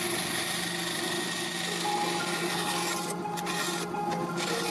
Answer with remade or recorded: recorded